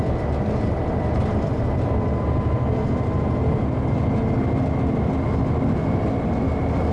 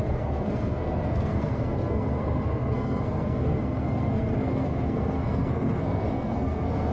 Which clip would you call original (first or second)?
first